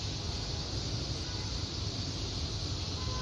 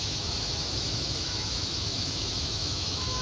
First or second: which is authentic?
first